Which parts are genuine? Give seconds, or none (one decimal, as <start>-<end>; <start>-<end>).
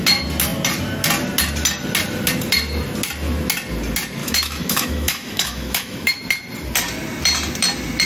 0.0-4.2; 6.2-8.1